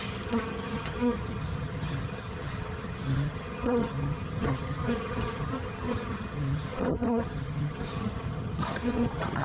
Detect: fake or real fake